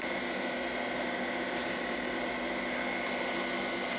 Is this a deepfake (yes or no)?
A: no